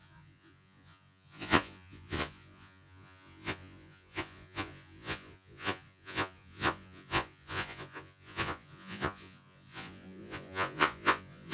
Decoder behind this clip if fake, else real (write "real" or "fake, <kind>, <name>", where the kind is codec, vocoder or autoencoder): fake, vocoder, Vocos